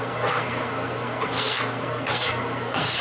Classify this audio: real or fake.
fake